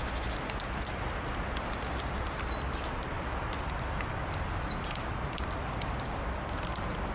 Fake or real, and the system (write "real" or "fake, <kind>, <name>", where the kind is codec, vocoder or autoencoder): real